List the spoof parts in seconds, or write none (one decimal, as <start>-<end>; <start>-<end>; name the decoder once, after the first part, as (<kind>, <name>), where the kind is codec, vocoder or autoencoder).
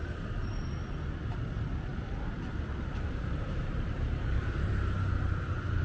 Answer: 1.9-4.7 (vocoder, BigVGAN v2)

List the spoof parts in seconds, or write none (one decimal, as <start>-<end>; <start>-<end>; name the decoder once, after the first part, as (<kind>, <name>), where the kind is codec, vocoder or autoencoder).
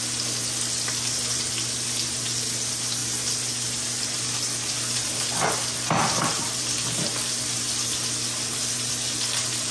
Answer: none